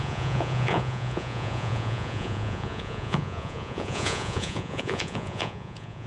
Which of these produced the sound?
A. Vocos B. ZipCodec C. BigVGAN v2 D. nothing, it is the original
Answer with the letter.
A